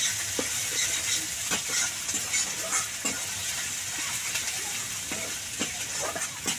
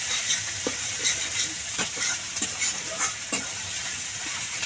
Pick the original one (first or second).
first